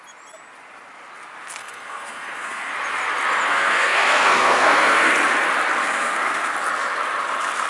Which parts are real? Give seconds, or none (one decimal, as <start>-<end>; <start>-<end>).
0.0-1.6; 2.7-3.5; 5.1-5.8; 6.5-7.7